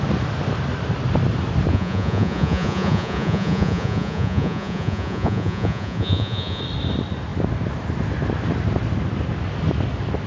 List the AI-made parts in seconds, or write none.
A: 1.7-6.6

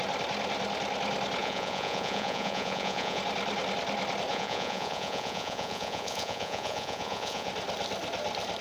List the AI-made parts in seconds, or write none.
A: 1.4-3.2; 4.3-7.5

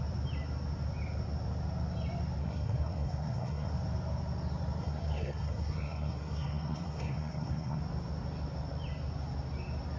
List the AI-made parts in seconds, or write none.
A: 2.4-3.7; 4.8-7.8

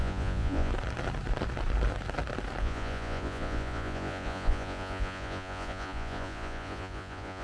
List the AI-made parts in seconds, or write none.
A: 0.0-0.7; 2.6-7.4

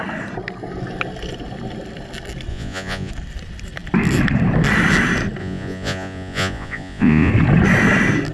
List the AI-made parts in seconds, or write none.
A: 2.5-3.1; 5.4-7.3

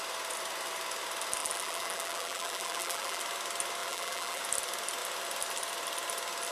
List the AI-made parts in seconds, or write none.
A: 1.4-3.2; 3.8-4.4

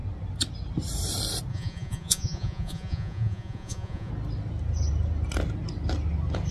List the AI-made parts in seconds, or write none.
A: 1.5-4.1

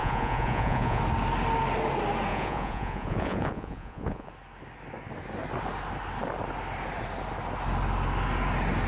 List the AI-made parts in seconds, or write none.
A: 0.0-1.0; 2.3-4.3